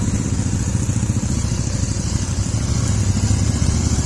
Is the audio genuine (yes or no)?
yes